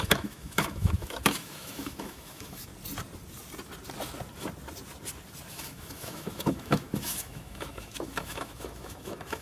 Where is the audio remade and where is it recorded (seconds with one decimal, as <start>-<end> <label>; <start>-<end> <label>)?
0.0-2.7 remade; 2.7-5.5 recorded; 5.5-9.4 remade